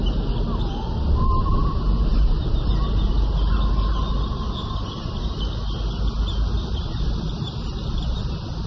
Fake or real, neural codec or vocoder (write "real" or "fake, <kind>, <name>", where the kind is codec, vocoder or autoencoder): real